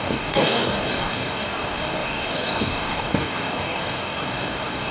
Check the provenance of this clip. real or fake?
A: fake